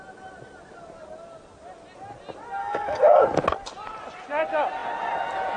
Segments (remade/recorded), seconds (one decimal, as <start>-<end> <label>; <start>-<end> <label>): 0.0-2.6 recorded; 2.6-3.2 remade; 3.2-5.6 recorded

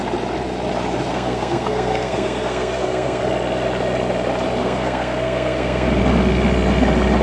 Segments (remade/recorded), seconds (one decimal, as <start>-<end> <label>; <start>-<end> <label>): 0.0-1.1 recorded; 1.1-3.2 remade; 3.2-4.6 recorded; 4.6-6.0 remade; 6.0-7.2 recorded

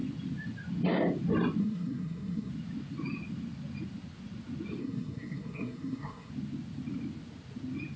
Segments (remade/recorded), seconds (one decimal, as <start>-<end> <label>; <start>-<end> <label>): 0.0-1.6 recorded; 1.6-2.5 remade; 2.5-4.8 recorded; 4.8-6.3 remade; 6.3-8.0 recorded

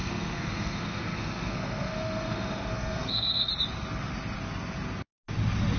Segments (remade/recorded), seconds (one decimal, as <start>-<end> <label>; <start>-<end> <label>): 0.0-3.5 remade; 3.5-5.8 recorded

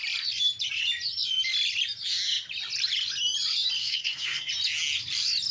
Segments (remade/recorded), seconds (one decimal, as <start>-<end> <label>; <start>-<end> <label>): 0.0-3.8 recorded; 3.8-4.5 remade; 4.5-5.5 recorded